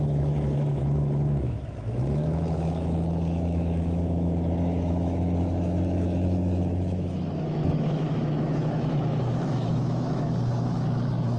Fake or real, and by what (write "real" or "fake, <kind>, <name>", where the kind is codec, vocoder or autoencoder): fake, autoencoder, DAC-VAE